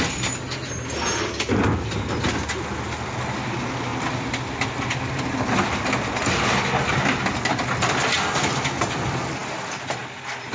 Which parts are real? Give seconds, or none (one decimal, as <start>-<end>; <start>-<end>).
0.0-10.5